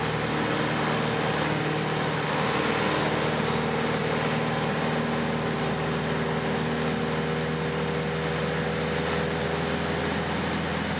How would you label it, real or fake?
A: real